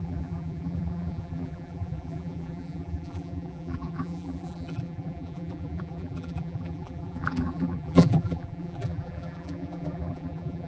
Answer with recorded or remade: remade